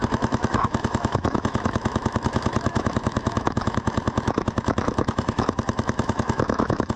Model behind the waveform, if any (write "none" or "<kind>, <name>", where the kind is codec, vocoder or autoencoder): autoencoder, DAC-VAE